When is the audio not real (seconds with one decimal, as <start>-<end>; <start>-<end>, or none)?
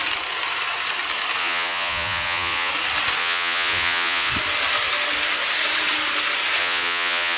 1.4-2.7; 3.2-4.3; 6.6-7.4